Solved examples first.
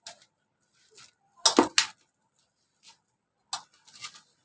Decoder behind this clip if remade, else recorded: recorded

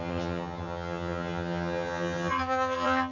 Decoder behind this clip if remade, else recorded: remade, vocoder, HiFi-GAN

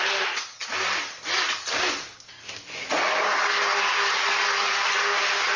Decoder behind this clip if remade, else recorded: recorded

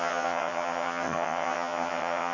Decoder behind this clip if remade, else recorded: remade, vocoder, HiFi-GAN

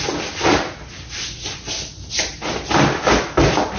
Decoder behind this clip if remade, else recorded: recorded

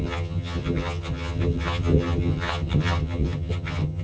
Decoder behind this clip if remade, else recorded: remade, vocoder, HiFi-GAN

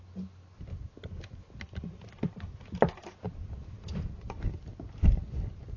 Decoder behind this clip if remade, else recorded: recorded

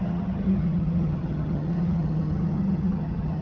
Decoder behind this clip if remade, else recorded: remade, vocoder, HiFi-GAN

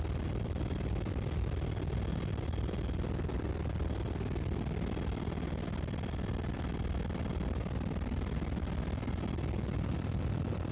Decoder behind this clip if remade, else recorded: recorded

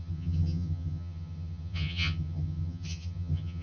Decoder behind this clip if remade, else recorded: remade, vocoder, HiFi-GAN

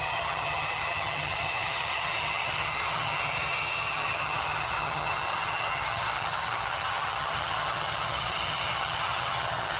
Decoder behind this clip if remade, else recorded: remade, vocoder, HiFi-GAN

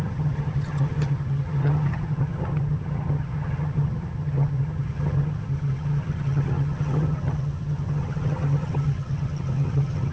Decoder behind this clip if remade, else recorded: remade, vocoder, HiFi-GAN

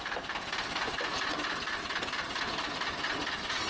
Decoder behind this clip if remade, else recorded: recorded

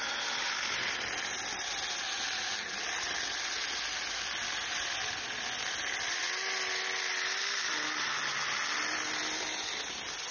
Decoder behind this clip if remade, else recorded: recorded